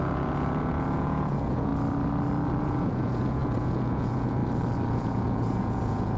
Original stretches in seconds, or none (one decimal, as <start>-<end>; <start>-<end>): 1.7-2.6; 4.4-4.9